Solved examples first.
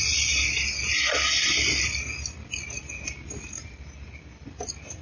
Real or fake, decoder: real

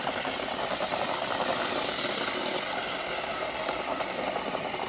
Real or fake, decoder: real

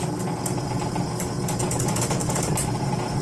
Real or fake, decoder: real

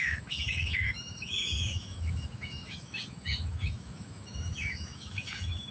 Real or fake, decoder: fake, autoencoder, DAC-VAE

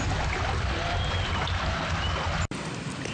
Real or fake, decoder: real